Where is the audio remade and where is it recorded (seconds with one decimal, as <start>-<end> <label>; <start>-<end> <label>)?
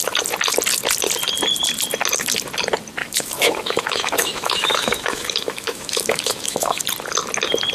0.0-3.0 recorded; 3.0-6.8 remade; 6.8-7.7 recorded